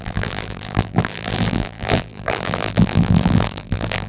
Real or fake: fake